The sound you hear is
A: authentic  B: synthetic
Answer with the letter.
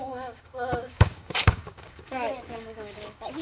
B